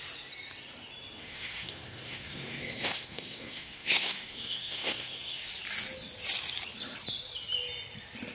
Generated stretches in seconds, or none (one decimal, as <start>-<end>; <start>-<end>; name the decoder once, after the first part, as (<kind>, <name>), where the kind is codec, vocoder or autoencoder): 1.2-5.5 (codec, SNAC)